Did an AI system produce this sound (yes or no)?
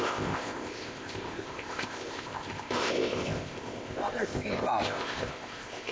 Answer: yes